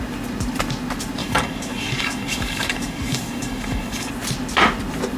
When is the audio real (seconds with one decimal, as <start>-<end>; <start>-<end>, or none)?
0.0-1.2; 4.1-5.2